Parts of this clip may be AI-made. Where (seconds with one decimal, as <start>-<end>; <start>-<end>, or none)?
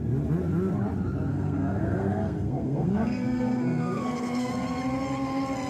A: 1.3-4.5